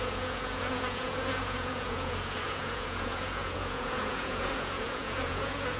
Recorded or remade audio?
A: remade